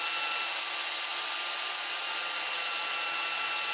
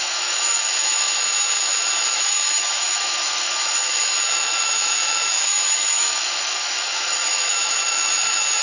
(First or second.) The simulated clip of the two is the second